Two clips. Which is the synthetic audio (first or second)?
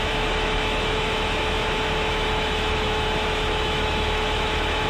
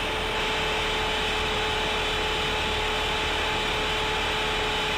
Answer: first